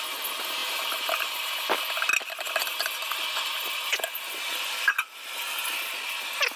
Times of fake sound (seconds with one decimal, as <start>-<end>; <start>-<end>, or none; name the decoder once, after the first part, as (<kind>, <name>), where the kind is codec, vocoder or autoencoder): none